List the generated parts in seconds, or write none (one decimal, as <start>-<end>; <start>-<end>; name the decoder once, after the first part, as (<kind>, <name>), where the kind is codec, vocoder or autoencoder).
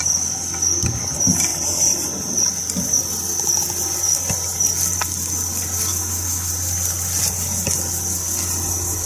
5.9-6.5 (autoencoder, DAC-VAE)